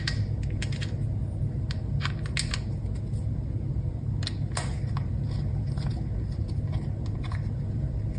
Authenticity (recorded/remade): recorded